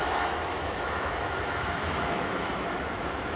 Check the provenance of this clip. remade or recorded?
remade